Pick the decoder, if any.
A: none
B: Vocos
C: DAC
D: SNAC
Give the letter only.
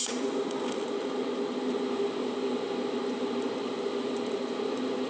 A